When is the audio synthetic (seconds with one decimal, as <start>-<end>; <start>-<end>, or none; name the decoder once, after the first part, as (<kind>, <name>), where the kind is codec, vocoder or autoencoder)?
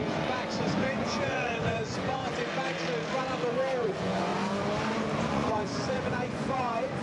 0.0-2.3 (vocoder, Vocos); 3.8-4.3; 5.3-7.0